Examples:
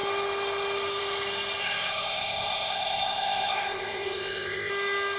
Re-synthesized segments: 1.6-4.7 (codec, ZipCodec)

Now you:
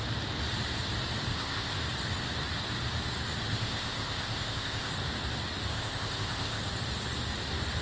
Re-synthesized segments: 1.3-1.8 (codec, ZipCodec); 3.5-4.9; 5.7-6.6

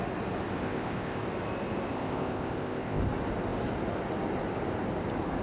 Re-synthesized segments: 0.6-1.2 (codec, ZipCodec); 1.9-3.0

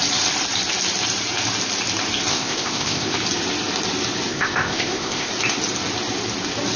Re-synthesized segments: 2.3-3.2 (codec, ZipCodec); 4.3-5.3

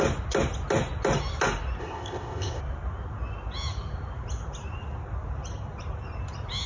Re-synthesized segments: 1.8-2.6 (codec, ZipCodec)

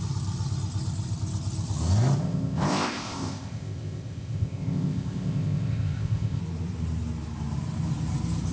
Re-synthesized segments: 2.2-6.4 (codec, ZipCodec)

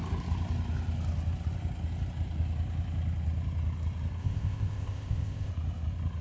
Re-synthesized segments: 4.2-5.5 (codec, ZipCodec)